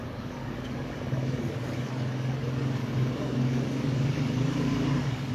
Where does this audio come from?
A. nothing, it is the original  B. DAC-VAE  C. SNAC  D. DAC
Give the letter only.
D